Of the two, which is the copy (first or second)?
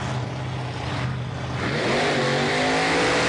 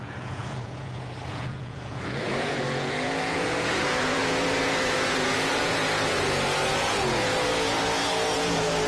second